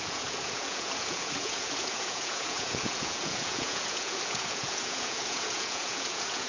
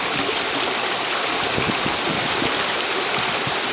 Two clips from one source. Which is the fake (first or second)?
first